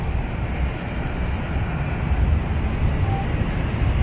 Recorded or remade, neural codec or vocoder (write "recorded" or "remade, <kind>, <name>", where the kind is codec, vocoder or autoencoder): recorded